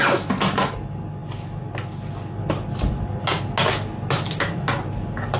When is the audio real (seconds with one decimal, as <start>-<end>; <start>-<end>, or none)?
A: 0.0-5.4